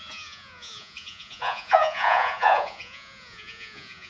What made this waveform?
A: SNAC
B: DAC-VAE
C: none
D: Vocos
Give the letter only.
D